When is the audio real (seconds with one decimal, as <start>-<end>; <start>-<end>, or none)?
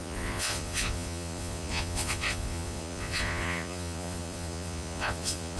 none